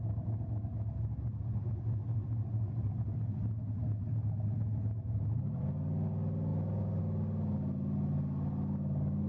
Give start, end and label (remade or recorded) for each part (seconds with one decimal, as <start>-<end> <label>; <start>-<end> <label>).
0.0-9.3 recorded